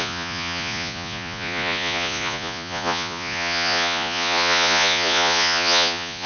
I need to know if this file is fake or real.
fake